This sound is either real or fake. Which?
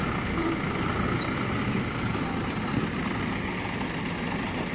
real